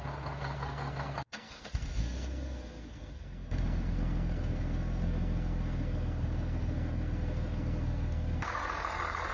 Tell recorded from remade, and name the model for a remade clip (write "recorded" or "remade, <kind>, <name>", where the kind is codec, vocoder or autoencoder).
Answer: remade, codec, SNAC